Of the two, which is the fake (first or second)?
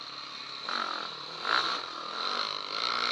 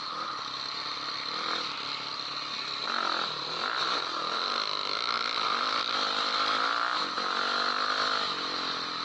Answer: second